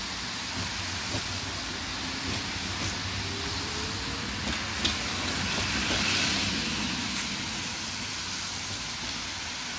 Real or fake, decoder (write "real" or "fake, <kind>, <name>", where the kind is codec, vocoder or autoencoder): real